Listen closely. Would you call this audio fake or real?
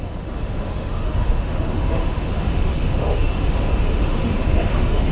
fake